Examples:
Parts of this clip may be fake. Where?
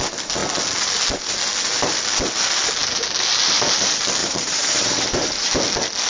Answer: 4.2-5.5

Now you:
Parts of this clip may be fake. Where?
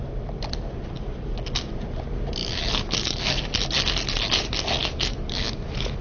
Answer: 2.4-3.4; 4.8-6.0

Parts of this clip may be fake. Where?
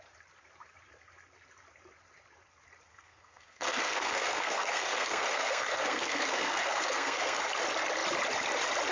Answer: 2.9-7.4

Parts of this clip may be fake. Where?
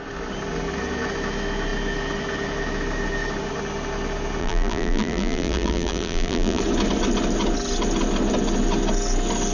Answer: 4.4-6.6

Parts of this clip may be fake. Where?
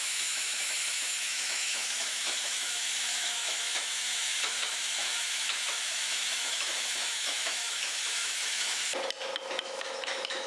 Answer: 0.0-8.8; 9.6-10.5